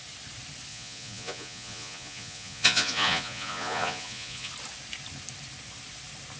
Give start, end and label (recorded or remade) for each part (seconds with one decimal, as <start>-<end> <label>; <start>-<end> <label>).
0.0-0.7 recorded; 0.7-4.5 remade; 4.5-6.4 recorded